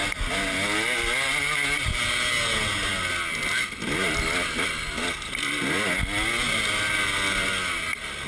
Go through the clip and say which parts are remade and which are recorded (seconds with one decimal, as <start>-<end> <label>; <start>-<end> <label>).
0.0-8.3 recorded